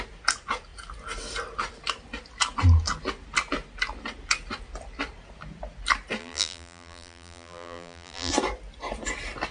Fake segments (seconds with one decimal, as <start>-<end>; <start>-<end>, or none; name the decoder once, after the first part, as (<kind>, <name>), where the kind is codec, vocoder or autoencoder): 6.2-8.3 (vocoder, BigVGAN v2)